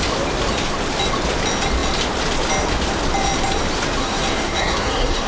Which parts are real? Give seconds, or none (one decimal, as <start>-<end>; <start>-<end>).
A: 0.0-4.0